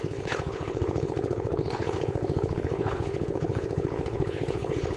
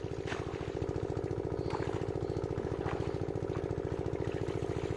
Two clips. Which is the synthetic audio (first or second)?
first